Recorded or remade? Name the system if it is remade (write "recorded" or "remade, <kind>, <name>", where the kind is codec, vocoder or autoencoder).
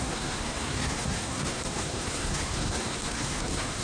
remade, codec, SNAC